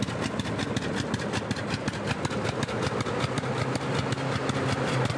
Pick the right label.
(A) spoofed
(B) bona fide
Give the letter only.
B